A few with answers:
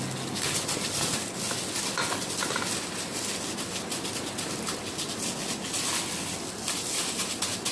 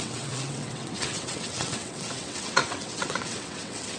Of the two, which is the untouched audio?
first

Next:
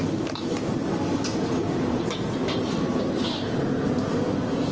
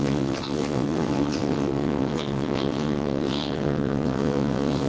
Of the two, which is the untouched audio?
first